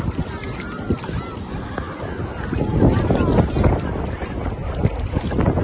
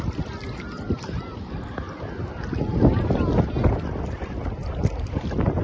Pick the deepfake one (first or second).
second